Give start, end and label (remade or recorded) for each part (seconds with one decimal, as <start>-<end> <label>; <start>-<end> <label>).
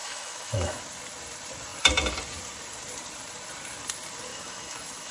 0.0-0.8 remade; 0.8-4.3 recorded; 4.3-5.1 remade